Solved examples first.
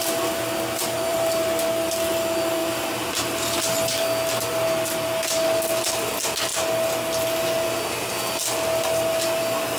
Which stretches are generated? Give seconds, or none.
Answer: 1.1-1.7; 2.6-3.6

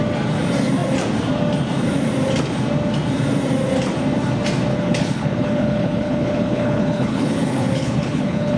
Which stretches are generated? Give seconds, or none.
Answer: 4.7-8.6

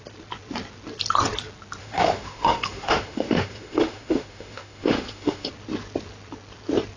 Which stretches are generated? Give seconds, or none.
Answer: 1.8-5.5